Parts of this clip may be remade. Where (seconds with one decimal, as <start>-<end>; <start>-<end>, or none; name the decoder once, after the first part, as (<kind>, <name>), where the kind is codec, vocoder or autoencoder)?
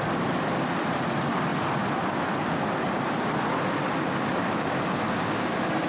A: none